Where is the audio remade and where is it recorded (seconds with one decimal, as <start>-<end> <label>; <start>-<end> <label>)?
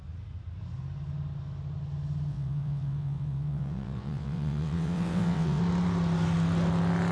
0.0-2.3 recorded; 2.3-5.6 remade; 5.6-7.1 recorded